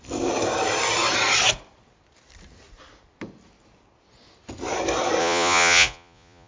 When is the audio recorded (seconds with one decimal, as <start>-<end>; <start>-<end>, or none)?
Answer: 0.0-5.2